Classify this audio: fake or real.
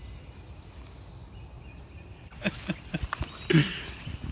real